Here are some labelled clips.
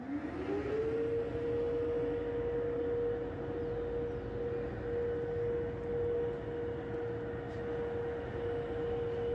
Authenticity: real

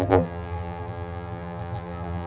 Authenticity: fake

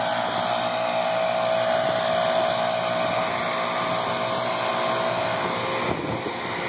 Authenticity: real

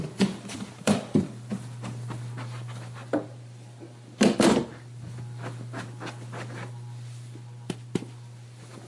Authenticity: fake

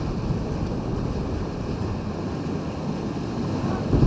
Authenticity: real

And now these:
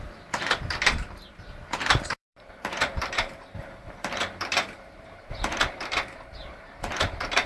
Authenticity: fake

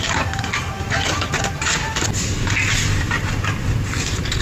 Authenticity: real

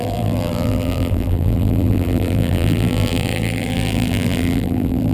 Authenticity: fake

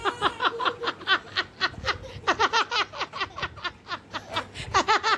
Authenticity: real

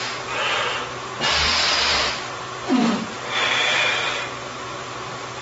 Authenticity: real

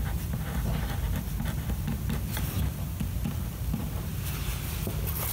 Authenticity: real